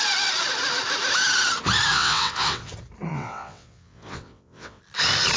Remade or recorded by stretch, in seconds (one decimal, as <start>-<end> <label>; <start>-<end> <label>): 0.0-1.9 recorded; 1.9-2.7 remade; 2.7-3.1 recorded; 3.1-4.8 remade; 4.8-5.4 recorded